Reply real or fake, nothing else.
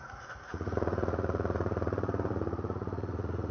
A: fake